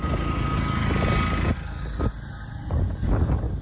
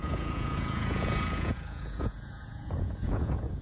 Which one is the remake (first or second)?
second